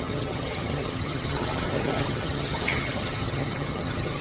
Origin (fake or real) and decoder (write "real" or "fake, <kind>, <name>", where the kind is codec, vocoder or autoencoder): fake, vocoder, HiFi-GAN